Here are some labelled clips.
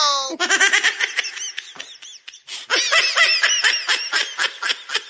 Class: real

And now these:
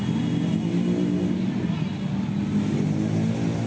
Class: real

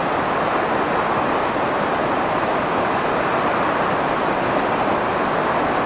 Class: real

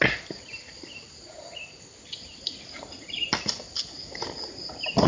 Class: real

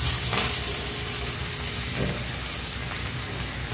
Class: real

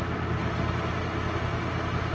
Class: real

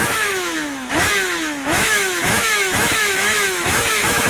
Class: fake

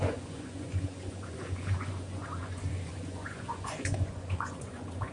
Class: fake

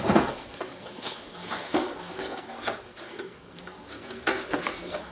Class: fake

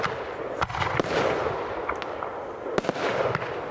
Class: real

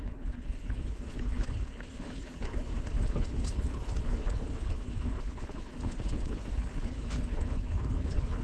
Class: fake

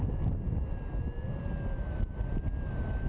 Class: real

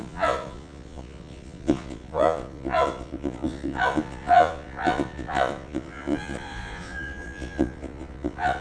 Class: fake